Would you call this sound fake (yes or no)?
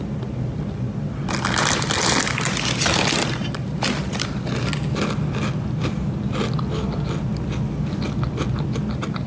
no